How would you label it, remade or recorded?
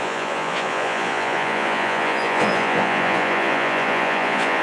remade